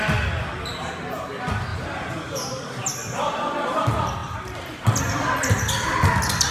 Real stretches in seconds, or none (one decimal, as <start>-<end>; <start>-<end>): 0.0-1.7; 3.4-4.2; 5.7-6.5